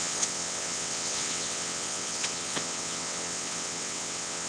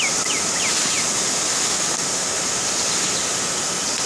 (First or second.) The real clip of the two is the second